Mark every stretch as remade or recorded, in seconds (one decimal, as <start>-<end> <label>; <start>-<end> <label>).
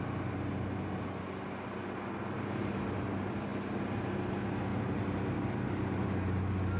0.0-6.8 recorded